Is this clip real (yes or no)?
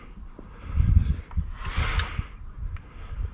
yes